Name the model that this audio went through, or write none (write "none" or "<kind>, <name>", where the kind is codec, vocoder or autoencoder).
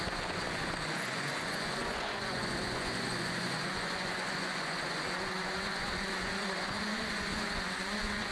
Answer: vocoder, Vocos